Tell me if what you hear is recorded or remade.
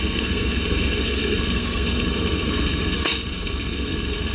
remade